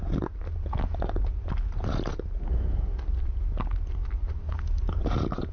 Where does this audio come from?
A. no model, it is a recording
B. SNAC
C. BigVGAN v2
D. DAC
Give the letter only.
A